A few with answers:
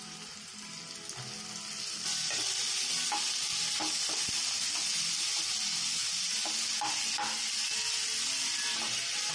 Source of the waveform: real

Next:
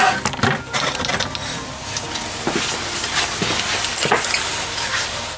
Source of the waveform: real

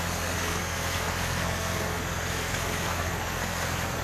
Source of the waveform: fake